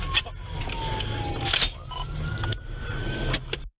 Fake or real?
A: real